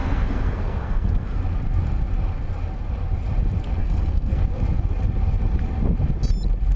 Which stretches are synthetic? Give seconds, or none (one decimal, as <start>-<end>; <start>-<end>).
0.0-1.4; 3.8-4.4